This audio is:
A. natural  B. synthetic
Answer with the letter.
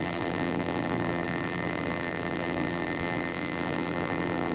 B